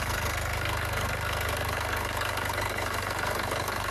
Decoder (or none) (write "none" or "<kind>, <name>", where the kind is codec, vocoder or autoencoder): codec, SNAC